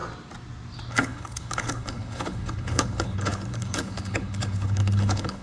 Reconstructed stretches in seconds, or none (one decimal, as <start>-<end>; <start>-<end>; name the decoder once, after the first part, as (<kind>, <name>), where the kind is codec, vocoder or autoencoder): 0.9-5.4 (codec, HILCodec)